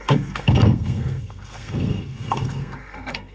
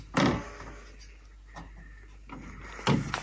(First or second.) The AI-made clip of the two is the first